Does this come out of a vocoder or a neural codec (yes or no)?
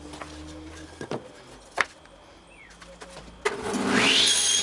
no